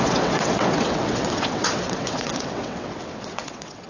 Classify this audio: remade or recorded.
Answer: remade